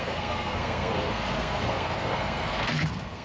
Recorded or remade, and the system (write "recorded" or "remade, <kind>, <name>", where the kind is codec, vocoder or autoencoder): remade, codec, SNAC